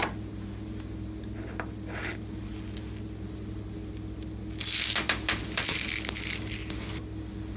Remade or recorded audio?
recorded